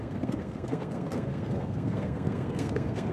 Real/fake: fake